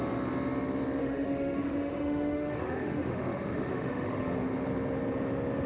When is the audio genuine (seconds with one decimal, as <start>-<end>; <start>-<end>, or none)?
0.0-1.0; 4.4-5.7